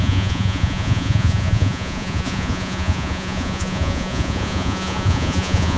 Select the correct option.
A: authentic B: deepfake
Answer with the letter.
B